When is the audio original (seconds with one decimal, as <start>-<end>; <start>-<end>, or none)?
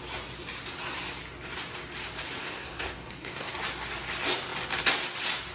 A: 0.0-2.4; 3.5-5.5